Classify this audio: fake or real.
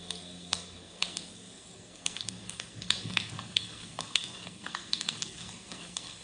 fake